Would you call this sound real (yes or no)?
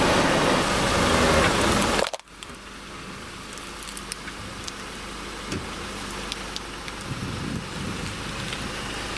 yes